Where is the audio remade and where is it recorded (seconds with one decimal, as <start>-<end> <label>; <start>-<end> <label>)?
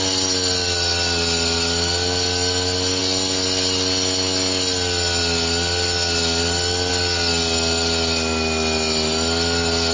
0.0-9.9 recorded